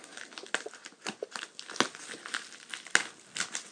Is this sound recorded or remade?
recorded